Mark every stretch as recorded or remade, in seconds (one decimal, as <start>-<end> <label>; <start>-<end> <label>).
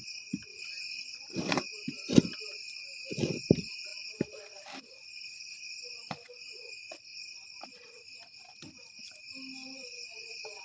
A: 0.0-0.5 recorded; 0.5-1.5 remade; 1.5-10.6 recorded